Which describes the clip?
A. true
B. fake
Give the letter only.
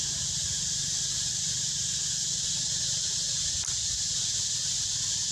A